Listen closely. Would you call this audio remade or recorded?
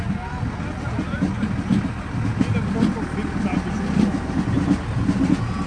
recorded